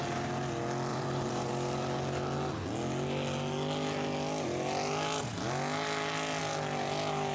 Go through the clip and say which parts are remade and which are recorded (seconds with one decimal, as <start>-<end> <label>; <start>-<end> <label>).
0.0-0.9 recorded; 0.9-1.5 remade; 1.5-7.3 recorded